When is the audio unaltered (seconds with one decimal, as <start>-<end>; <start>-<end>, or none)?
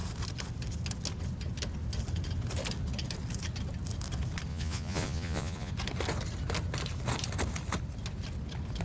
0.0-4.5; 5.7-8.8